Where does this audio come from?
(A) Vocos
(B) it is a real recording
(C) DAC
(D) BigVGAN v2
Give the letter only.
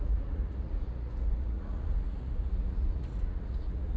A